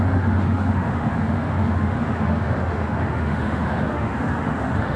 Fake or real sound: fake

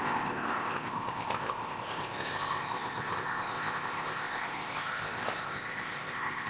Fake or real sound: fake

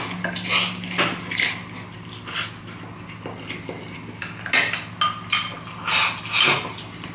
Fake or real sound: real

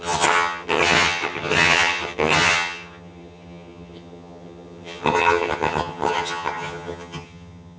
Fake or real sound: fake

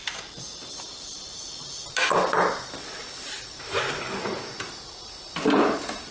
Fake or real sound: real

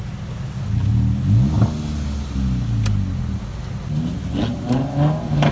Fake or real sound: real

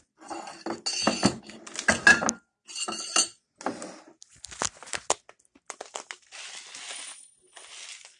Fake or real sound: real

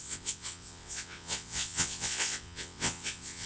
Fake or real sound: fake